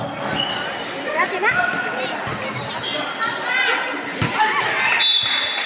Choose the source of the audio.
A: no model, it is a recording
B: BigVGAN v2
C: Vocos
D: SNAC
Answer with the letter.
A